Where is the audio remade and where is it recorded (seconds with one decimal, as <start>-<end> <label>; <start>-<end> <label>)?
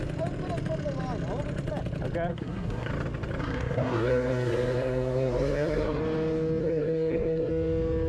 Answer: 0.0-2.3 recorded; 2.3-2.9 remade; 2.9-3.4 recorded; 3.4-6.0 remade; 6.0-6.6 recorded; 6.6-7.5 remade; 7.5-8.1 recorded